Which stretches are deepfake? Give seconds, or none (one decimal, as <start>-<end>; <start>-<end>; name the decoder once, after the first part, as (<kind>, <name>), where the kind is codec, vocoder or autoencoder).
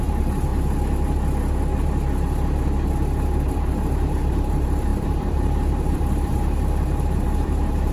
0.0-0.5 (vocoder, BigVGAN v2); 3.5-7.9